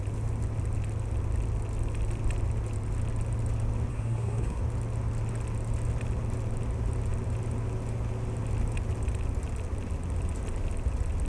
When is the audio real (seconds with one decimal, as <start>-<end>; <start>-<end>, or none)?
0.0-3.9; 4.6-11.3